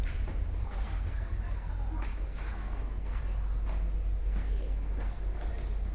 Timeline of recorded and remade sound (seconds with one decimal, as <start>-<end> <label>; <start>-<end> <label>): 0.0-0.6 recorded; 0.6-1.7 remade; 1.7-2.1 recorded; 2.1-3.2 remade; 3.2-4.2 recorded; 4.2-5.5 remade; 5.5-5.9 recorded